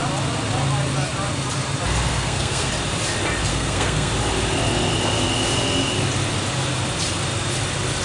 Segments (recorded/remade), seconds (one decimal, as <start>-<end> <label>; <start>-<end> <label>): 0.0-2.1 recorded; 2.1-2.7 remade; 2.7-3.5 recorded; 3.5-4.1 remade; 4.1-8.0 recorded